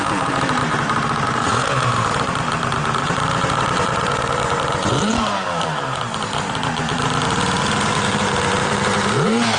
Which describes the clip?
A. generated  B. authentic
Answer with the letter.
A